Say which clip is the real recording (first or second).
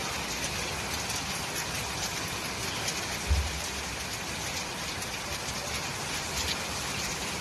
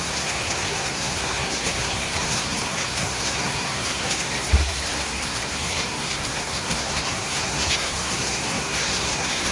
first